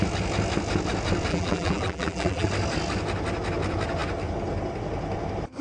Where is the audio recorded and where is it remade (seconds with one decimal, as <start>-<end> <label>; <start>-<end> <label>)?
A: 0.0-1.3 recorded; 1.3-2.5 remade; 2.5-5.6 recorded

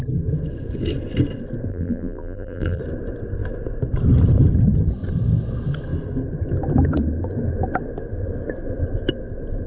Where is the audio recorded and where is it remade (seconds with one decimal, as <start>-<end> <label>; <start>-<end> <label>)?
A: 0.0-1.7 recorded; 1.7-2.8 remade; 2.8-9.7 recorded

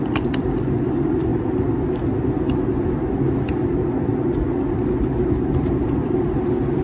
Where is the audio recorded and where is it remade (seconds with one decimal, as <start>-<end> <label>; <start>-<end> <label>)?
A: 0.0-6.8 recorded

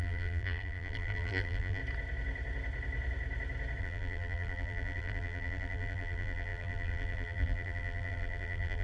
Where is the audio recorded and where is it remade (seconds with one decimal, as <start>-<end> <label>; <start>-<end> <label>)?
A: 0.0-1.8 remade; 1.8-3.8 recorded; 3.8-8.8 remade

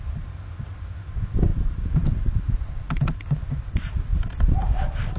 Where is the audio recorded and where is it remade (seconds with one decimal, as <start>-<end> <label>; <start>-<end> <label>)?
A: 0.0-5.2 remade